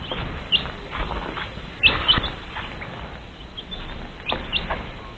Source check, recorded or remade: recorded